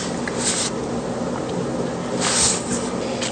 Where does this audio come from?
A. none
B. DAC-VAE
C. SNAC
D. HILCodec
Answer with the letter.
A